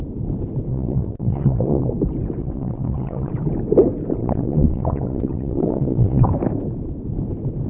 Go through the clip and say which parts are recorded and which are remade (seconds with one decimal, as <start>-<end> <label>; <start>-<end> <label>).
0.0-0.7 recorded; 0.7-1.9 remade; 1.9-2.4 recorded; 2.4-3.3 remade; 3.3-4.2 recorded; 4.2-6.3 remade; 6.3-7.7 recorded